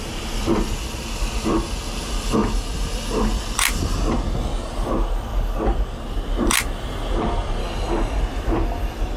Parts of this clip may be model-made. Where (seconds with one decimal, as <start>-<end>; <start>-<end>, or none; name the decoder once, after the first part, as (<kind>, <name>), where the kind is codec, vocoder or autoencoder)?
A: 7.6-8.2 (codec, DAC)